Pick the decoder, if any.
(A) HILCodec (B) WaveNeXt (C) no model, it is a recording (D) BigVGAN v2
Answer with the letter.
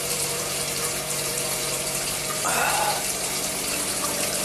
D